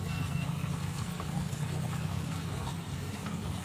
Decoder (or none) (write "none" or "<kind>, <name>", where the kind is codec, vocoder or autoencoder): codec, SNAC